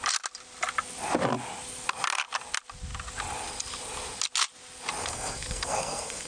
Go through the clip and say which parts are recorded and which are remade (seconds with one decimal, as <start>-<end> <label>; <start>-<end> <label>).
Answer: 0.0-5.0 recorded; 5.0-6.3 remade